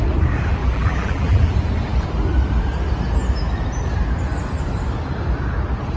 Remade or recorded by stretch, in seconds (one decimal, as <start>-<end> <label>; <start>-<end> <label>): 0.0-0.6 recorded; 0.6-1.5 remade; 1.5-6.0 recorded